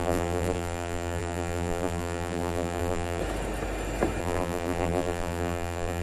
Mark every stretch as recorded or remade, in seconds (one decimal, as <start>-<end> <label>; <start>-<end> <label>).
0.0-3.2 remade; 3.2-4.2 recorded; 4.2-6.0 remade